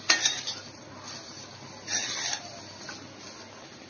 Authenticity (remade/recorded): recorded